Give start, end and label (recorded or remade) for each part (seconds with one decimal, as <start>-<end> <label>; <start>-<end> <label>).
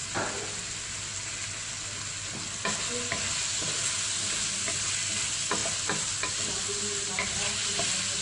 0.0-8.2 recorded